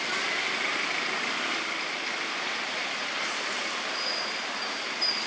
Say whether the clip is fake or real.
real